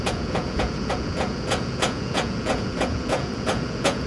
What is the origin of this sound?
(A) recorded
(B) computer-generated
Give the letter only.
B